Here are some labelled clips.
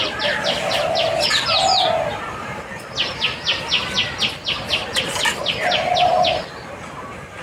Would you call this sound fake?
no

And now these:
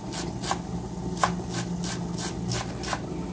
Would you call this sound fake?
no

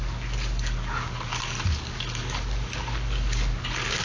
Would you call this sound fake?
yes